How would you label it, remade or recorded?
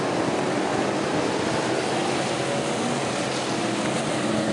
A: recorded